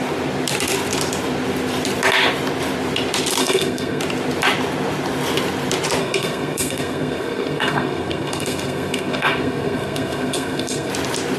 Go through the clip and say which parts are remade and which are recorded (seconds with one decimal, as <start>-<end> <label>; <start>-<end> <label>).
0.0-3.4 recorded; 3.4-4.0 remade; 4.0-6.0 recorded; 6.0-10.9 remade; 10.9-11.4 recorded